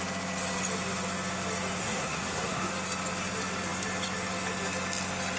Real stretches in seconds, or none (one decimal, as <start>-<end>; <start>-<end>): 0.0-1.8; 2.7-5.4